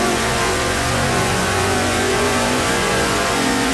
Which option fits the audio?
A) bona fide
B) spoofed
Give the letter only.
B